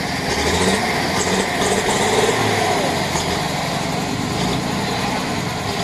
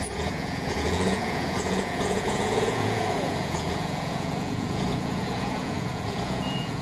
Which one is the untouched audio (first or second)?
first